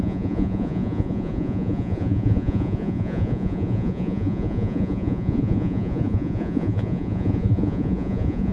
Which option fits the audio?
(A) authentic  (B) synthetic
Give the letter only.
B